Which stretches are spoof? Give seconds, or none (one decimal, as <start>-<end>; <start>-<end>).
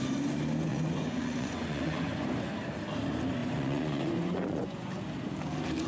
0.7-2.5; 3.4-4.9